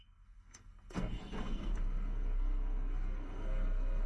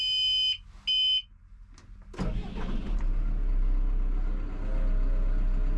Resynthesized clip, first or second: first